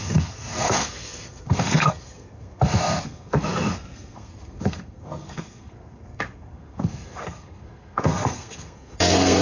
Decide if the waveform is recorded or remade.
remade